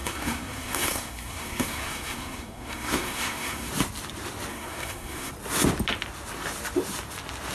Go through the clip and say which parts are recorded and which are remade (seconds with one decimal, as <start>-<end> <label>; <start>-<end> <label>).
0.0-3.7 remade; 3.7-4.5 recorded; 4.5-5.3 remade; 5.3-7.5 recorded